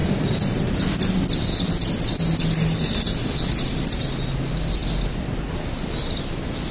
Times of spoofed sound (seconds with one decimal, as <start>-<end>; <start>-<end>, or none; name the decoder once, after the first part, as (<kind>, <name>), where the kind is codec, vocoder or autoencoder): none